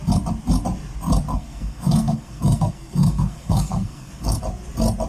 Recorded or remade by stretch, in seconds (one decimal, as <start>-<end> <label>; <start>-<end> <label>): 0.0-1.3 recorded; 1.3-4.4 remade; 4.4-5.1 recorded